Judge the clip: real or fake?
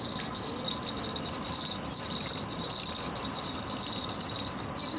real